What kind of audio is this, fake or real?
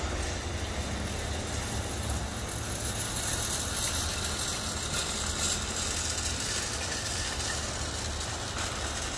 real